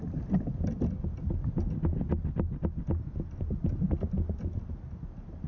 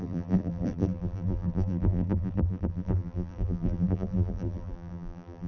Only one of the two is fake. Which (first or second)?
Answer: second